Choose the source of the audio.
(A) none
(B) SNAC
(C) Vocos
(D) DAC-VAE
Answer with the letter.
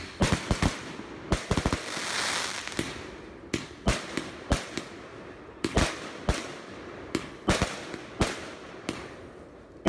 A